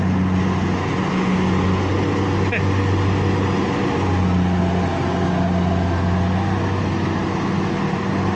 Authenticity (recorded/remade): recorded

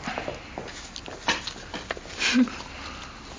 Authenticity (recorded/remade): recorded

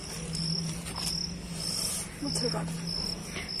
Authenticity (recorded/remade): recorded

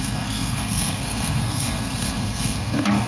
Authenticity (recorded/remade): remade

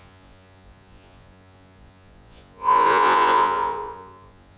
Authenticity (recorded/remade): remade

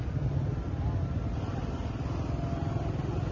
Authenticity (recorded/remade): recorded